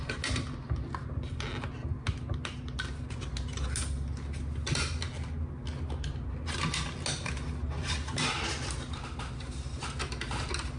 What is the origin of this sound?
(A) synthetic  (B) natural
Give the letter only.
B